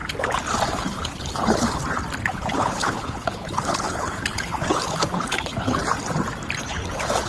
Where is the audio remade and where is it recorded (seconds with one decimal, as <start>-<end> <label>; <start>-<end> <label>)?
0.0-0.7 recorded; 0.7-1.8 remade; 1.8-2.3 recorded; 2.3-5.8 remade; 5.8-6.7 recorded; 6.7-7.3 remade